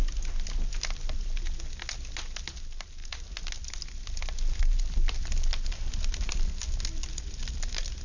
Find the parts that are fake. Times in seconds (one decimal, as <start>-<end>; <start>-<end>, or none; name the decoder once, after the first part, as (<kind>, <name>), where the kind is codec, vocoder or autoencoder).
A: none